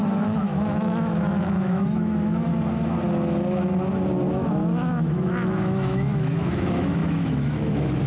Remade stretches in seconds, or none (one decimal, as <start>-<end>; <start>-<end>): 0.0-2.5; 4.3-8.1